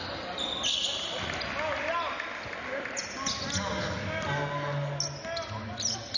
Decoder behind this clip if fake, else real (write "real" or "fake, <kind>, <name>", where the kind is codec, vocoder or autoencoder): real